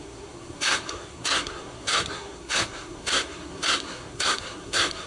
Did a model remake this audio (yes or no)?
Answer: yes